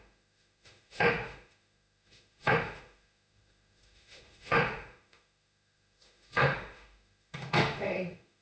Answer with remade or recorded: remade